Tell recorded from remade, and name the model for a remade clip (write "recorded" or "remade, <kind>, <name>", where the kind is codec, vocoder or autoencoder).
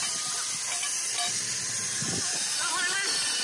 recorded